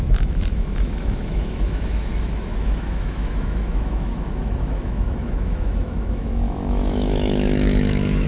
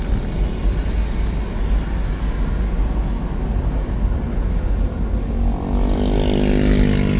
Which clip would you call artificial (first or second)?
first